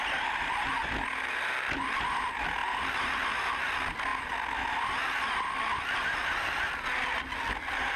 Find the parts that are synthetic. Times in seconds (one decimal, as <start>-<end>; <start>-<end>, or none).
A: none